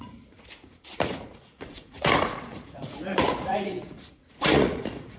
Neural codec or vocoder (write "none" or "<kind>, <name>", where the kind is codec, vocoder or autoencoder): vocoder, Vocos